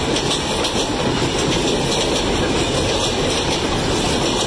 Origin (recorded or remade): recorded